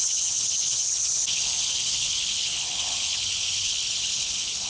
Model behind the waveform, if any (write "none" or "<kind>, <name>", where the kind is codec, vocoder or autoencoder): codec, HILCodec